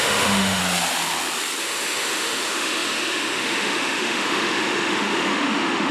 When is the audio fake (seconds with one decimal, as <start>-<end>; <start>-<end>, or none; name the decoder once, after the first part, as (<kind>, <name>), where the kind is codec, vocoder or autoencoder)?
0.0-0.6 (autoencoder, DAC-VAE); 1.6-5.9